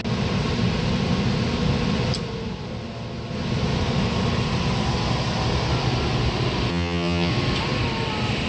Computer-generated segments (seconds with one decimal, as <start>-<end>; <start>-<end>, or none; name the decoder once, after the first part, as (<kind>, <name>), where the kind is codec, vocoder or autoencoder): 6.7-7.3 (vocoder, HiFi-GAN)